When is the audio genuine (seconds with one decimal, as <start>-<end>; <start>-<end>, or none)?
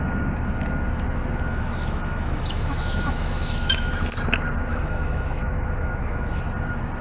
0.0-1.5; 3.9-4.7; 6.4-7.0